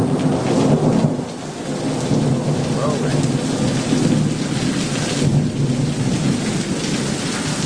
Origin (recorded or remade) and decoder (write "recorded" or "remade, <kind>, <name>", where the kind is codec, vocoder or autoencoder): recorded